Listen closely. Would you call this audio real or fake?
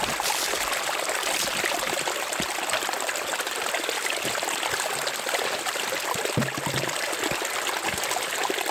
real